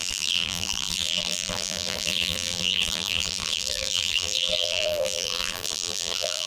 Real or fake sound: fake